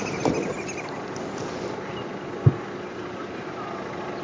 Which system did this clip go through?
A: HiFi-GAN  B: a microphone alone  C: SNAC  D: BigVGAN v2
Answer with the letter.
B